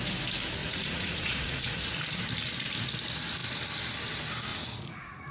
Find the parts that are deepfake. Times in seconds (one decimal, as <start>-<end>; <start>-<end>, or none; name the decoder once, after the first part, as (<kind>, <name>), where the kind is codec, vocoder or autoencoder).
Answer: 0.6-2.0 (vocoder, Vocos); 4.5-5.3